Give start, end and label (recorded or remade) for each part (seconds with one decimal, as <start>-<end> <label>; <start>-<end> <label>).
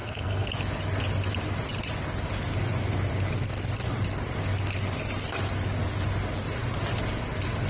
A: 0.0-0.5 remade; 0.5-7.7 recorded